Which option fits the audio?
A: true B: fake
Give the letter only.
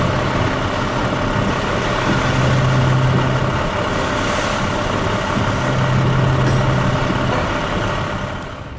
A